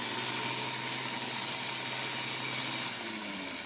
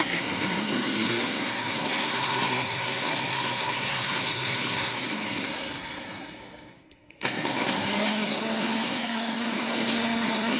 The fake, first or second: second